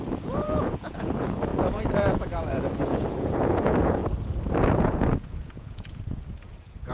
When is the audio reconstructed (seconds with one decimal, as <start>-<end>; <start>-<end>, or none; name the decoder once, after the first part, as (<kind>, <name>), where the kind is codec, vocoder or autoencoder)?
0.0-4.0 (vocoder, Vocos); 4.6-6.9